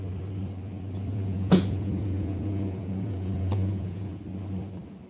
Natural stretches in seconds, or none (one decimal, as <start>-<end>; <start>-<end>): 0.0-1.1; 4.2-5.1